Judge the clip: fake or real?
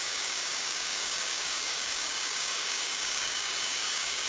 fake